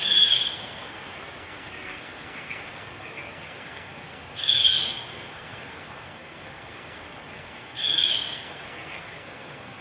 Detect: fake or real fake